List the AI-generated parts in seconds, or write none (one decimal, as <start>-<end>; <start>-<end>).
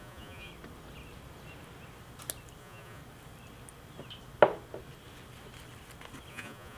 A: 0.0-0.5; 2.6-3.0; 6.3-6.8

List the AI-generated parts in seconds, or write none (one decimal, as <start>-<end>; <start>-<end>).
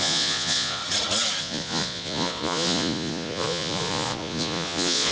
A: 0.0-0.8; 1.4-5.1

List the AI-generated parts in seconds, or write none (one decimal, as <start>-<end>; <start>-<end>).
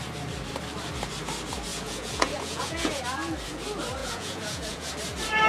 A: 1.7-3.0; 4.0-4.9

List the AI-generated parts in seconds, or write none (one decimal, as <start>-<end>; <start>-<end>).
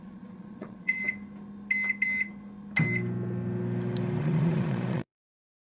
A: 0.0-1.0; 4.2-5.6